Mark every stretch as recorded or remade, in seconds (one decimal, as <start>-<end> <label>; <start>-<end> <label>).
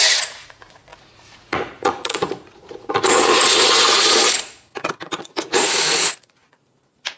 0.0-7.2 remade